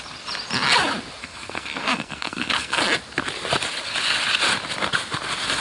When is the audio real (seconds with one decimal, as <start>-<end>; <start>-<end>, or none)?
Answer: 0.0-1.2; 2.8-5.6